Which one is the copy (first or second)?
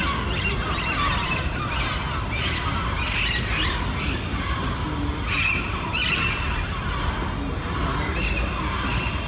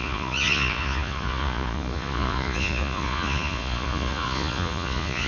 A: second